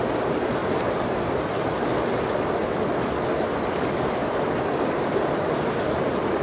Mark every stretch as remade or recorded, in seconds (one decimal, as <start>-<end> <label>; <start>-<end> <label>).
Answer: 0.0-6.4 recorded